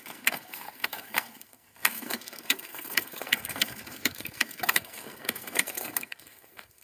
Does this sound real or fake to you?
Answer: fake